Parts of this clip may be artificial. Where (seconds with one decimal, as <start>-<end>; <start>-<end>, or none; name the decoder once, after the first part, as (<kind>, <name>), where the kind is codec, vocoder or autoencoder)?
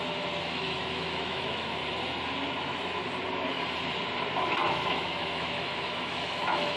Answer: 0.0-1.8 (autoencoder, DAC-VAE); 2.6-3.0; 4.7-6.8